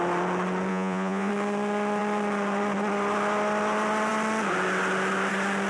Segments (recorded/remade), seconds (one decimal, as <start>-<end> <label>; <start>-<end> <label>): 0.0-0.7 recorded; 0.7-1.3 remade; 1.3-5.7 recorded